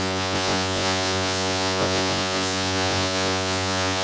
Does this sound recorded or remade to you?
remade